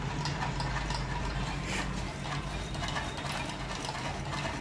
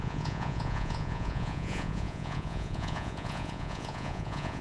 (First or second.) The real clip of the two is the first